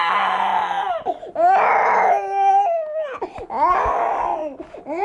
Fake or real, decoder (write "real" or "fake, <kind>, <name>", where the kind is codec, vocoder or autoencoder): real